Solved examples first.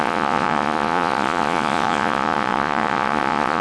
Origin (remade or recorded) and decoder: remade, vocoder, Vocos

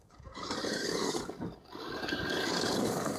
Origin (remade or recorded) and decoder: remade, codec, DAC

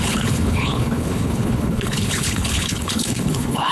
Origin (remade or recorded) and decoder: remade, codec, HILCodec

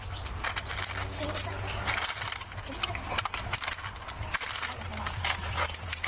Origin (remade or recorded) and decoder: recorded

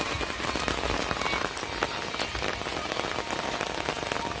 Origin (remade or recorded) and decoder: recorded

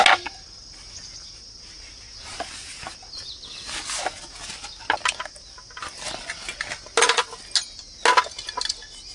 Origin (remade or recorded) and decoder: recorded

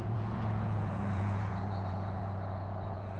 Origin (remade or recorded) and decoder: remade, vocoder, Vocos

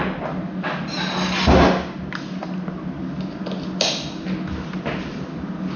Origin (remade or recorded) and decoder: recorded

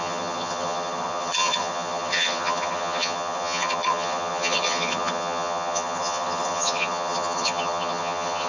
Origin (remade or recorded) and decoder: remade, vocoder, HiFi-GAN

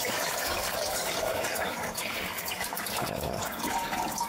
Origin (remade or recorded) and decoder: remade, codec, DAC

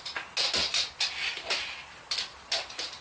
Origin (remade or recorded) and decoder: recorded